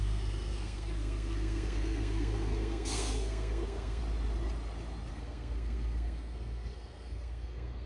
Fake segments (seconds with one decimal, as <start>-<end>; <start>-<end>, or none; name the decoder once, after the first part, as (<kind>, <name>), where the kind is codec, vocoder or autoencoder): 0.0-4.0 (codec, SNAC); 5.1-7.9